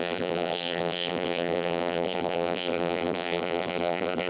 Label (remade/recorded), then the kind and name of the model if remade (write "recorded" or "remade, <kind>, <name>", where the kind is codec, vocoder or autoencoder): remade, vocoder, BigVGAN v2